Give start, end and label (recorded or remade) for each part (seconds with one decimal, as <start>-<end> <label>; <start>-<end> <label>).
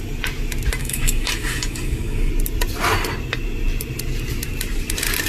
0.0-0.8 recorded; 0.8-2.3 remade; 2.3-5.3 recorded